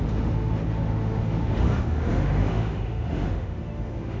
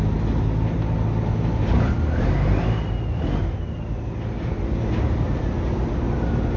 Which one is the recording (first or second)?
second